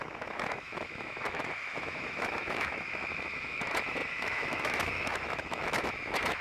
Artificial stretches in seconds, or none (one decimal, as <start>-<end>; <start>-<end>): 0.0-6.4